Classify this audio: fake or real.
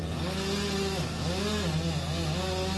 real